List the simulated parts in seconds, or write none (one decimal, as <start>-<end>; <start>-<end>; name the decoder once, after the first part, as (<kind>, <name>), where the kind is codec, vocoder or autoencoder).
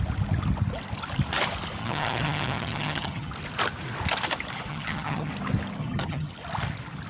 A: 1.8-3.3 (vocoder, HiFi-GAN); 4.7-5.3; 5.8-6.3